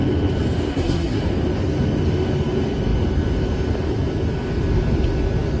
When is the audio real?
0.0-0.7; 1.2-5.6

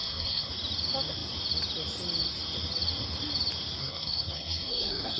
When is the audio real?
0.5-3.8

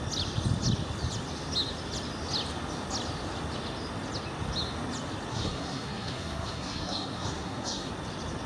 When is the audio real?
0.0-5.3; 7.9-8.5

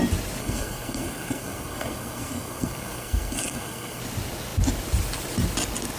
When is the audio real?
0.0-0.4; 4.0-6.0